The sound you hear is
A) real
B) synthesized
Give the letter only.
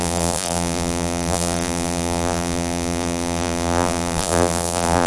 B